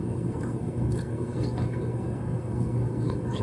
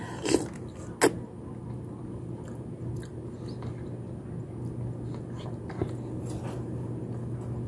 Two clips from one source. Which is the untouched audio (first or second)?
second